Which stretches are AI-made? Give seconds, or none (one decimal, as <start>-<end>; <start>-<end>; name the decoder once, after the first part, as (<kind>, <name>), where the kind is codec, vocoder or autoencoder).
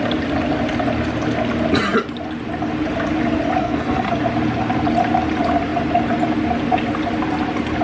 3.6-4.1 (codec, SNAC)